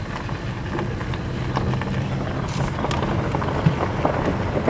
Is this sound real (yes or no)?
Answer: yes